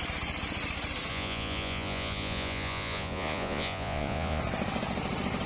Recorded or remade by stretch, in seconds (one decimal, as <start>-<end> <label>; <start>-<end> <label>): 0.0-1.1 recorded; 1.1-4.4 remade; 4.4-5.5 recorded